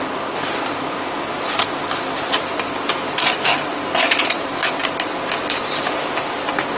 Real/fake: real